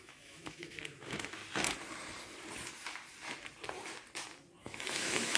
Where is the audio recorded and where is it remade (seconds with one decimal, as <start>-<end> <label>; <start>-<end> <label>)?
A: 0.0-1.4 remade; 1.4-4.6 recorded; 4.6-5.4 remade